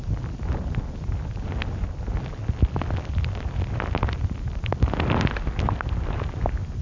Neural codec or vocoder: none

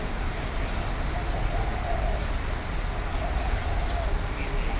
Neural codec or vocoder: none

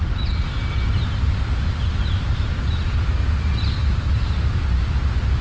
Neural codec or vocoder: none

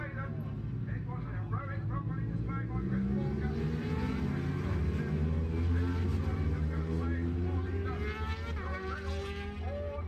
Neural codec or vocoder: none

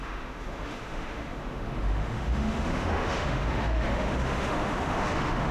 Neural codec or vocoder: autoencoder, DAC-VAE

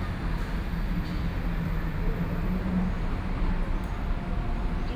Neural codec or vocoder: none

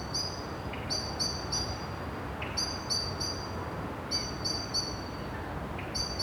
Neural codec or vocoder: none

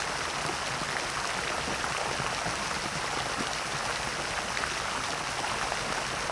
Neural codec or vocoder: none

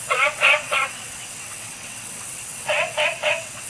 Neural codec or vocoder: vocoder, WaveNeXt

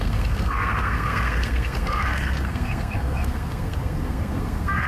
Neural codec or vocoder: codec, SNAC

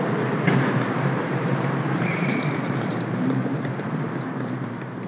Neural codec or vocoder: vocoder, BigVGAN v2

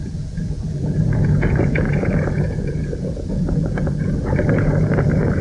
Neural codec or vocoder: vocoder, Vocos